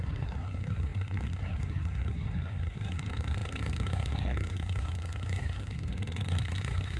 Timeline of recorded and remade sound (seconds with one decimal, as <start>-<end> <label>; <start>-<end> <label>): 0.0-7.0 remade